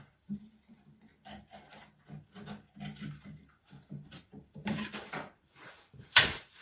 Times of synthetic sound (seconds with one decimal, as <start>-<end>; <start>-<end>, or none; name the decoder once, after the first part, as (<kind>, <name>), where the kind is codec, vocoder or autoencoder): 0.0-1.1 (vocoder, BigVGAN v2); 3.1-6.6